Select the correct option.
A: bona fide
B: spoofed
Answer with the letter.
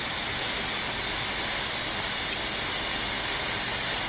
A